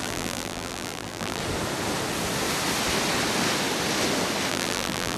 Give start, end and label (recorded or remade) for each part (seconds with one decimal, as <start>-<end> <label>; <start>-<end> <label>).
0.0-1.4 remade; 1.4-4.5 recorded; 4.5-5.2 remade